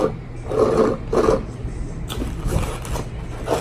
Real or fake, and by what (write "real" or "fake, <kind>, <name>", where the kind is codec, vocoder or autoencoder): real